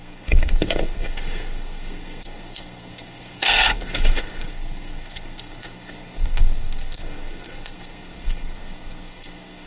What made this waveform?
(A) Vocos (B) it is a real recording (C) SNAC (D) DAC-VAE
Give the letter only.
C